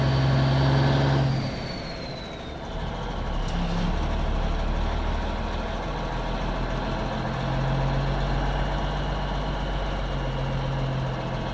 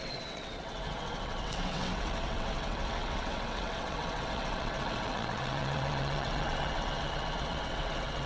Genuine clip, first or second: first